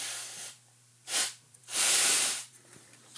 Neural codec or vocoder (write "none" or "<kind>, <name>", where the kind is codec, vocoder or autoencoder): vocoder, BigVGAN v2